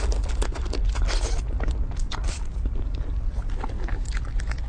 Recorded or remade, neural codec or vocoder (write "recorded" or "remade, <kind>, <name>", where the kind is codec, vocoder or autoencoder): recorded